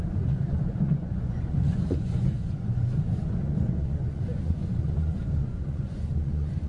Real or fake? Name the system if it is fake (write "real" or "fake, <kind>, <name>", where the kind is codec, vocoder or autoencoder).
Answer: fake, vocoder, Vocos